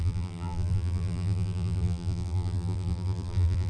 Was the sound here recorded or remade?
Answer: remade